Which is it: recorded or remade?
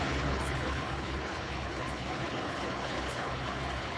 remade